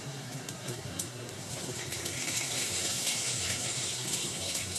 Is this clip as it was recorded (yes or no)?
no